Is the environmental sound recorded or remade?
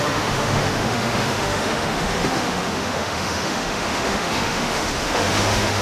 remade